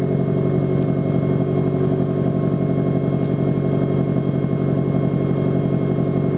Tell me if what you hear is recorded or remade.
recorded